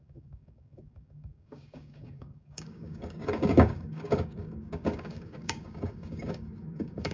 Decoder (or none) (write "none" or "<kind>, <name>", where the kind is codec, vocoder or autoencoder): codec, DAC